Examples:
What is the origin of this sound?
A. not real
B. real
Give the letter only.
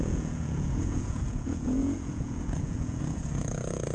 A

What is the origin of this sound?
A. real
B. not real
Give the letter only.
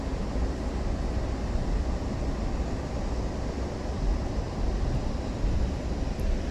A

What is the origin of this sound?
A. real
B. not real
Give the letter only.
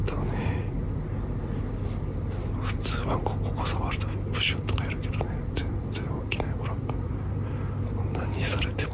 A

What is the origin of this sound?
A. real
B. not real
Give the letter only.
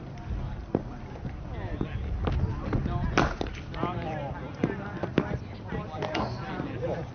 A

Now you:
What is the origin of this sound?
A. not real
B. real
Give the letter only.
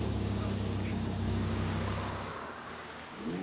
A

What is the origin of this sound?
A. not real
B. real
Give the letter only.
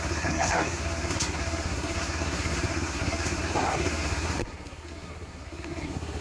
A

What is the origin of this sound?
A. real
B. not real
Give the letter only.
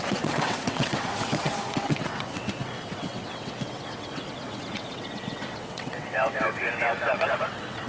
B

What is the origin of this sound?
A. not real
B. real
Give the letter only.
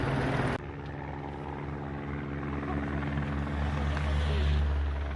B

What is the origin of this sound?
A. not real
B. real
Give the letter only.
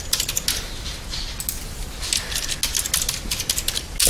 B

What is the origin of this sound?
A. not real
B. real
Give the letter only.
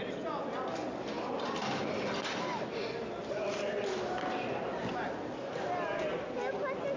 B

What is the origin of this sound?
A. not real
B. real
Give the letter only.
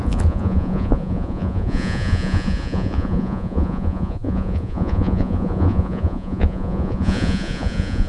A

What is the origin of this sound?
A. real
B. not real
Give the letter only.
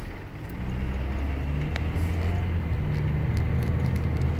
A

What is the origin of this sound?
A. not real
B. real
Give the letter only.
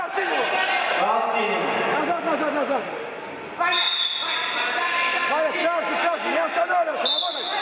B